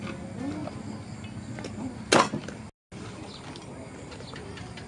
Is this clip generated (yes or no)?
no